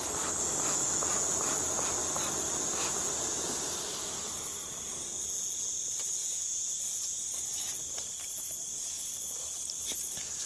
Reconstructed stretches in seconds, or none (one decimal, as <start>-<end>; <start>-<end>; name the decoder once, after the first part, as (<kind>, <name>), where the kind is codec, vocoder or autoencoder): 6.2-6.8 (vocoder, Vocos)

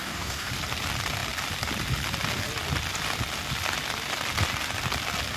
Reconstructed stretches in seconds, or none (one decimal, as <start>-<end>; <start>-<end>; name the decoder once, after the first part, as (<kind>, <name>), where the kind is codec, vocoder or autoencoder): 0.0-0.5 (codec, DAC)

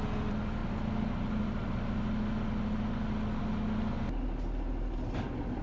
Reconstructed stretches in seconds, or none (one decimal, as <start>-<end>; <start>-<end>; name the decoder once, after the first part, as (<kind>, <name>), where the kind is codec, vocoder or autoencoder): none

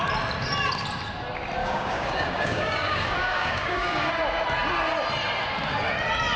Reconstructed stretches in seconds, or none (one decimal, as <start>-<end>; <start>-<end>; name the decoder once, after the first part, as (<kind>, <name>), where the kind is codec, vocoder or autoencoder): 1.6-4.1 (codec, DAC)

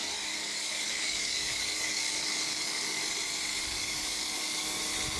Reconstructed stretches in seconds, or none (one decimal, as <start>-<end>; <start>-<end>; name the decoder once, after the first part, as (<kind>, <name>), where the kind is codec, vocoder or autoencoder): 0.0-3.0 (codec, DAC); 3.5-4.8

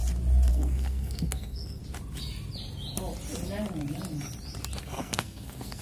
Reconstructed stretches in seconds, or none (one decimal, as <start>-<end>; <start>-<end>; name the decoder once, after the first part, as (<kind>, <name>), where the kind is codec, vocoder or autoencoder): 0.5-1.8 (codec, SNAC); 4.8-5.8

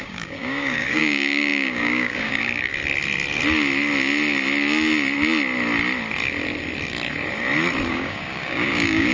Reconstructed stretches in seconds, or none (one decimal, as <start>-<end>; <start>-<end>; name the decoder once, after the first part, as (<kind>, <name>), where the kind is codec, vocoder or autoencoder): 0.0-2.7 (codec, DAC); 7.9-9.1